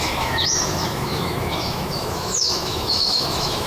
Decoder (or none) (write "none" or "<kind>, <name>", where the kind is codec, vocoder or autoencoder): autoencoder, DAC-VAE